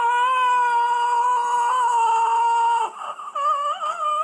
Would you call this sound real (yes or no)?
yes